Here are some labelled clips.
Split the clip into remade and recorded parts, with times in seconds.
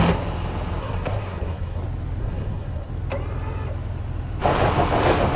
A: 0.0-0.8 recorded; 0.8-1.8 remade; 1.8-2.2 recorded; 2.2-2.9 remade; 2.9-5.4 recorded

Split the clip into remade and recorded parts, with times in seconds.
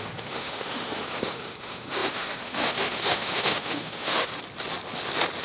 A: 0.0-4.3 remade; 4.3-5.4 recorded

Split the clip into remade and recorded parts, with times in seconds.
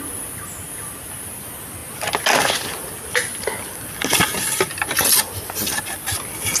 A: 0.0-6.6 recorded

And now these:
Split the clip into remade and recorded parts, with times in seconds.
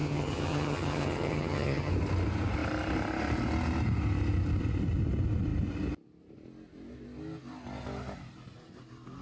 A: 0.0-1.9 remade; 1.9-9.2 recorded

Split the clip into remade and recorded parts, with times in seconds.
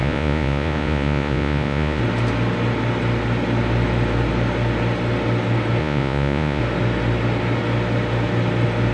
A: 0.0-2.0 remade; 2.0-5.8 recorded; 5.8-6.6 remade; 6.6-8.9 recorded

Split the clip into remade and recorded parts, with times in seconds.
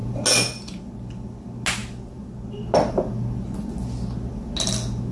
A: 0.0-5.1 recorded